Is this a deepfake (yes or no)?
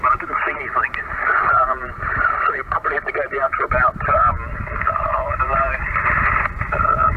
no